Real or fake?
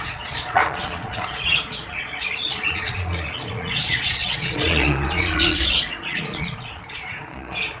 fake